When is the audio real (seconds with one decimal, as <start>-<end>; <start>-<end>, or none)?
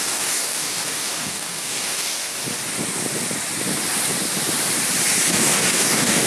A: 2.4-5.3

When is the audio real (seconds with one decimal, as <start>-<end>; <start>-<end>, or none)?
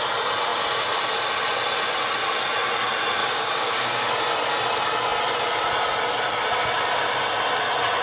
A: 0.0-3.2; 4.1-8.0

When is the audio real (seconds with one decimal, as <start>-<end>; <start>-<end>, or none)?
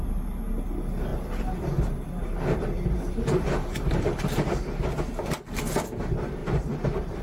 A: 0.0-1.1; 5.4-6.4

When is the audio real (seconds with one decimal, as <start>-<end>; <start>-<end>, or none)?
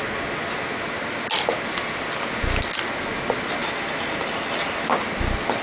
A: 0.0-3.6; 4.9-5.6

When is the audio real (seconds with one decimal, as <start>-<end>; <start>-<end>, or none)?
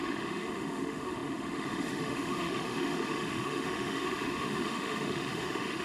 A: none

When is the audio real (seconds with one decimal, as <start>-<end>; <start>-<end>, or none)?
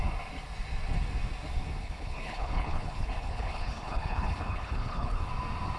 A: 0.0-1.8; 5.3-5.8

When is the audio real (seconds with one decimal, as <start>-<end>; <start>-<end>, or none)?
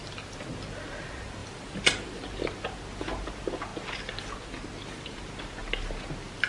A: 0.0-1.4; 2.2-6.5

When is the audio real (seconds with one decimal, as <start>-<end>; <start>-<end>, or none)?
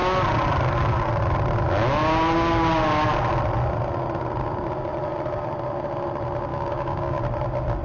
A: 0.0-6.5; 7.2-7.8